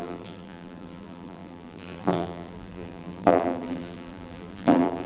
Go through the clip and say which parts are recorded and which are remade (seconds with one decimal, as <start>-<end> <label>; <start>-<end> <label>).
0.0-5.1 remade